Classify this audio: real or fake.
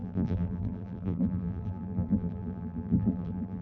fake